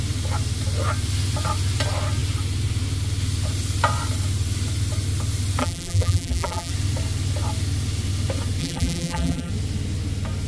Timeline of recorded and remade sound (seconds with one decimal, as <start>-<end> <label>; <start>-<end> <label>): 0.0-5.6 recorded; 5.6-6.7 remade; 6.7-8.6 recorded; 8.6-9.5 remade; 9.5-10.5 recorded